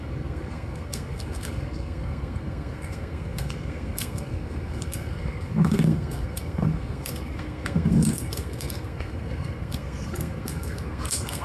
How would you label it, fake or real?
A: fake